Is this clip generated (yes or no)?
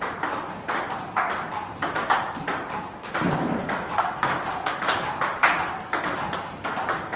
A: yes